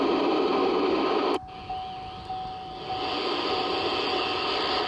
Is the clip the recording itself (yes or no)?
yes